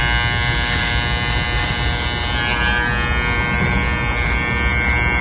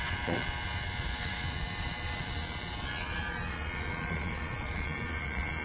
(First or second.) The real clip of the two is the first